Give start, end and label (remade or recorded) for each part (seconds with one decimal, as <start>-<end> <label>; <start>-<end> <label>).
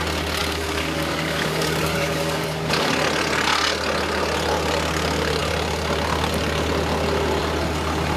0.0-0.4 recorded; 0.4-2.9 remade; 2.9-8.2 recorded